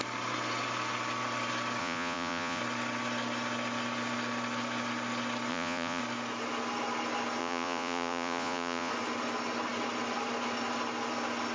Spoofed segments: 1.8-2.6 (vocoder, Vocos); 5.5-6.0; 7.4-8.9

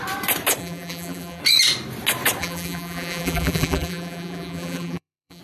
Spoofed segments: 0.6-1.4 (vocoder, BigVGAN v2); 2.4-5.4

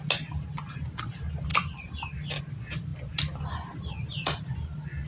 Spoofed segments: none